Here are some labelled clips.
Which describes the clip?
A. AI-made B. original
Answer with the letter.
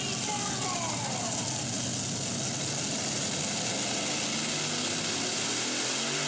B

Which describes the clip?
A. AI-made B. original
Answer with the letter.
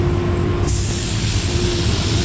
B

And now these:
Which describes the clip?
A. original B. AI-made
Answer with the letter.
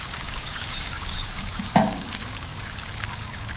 B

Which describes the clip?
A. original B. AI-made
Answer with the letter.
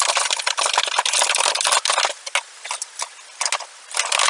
A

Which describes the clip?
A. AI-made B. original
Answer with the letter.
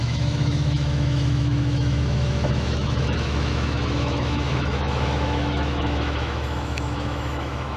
A